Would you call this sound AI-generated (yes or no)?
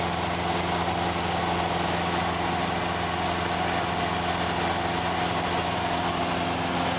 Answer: no